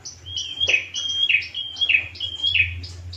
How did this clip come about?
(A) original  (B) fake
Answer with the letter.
A